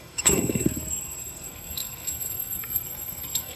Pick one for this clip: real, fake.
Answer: fake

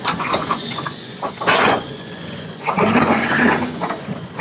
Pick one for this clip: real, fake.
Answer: fake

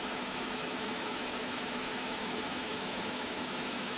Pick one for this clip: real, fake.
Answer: fake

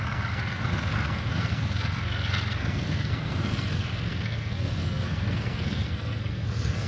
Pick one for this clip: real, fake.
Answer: fake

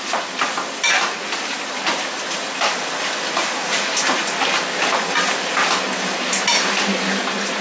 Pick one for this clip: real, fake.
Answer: real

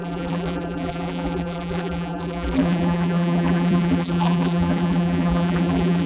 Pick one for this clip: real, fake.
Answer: fake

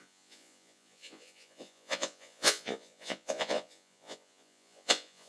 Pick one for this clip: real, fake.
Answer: fake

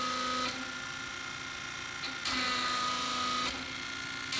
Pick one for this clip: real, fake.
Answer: real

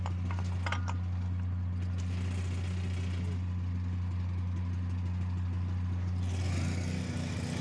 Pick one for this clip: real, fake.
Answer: real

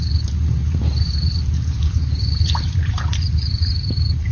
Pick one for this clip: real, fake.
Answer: fake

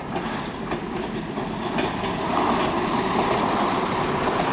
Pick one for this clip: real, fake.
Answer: real